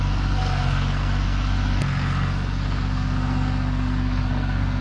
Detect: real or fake fake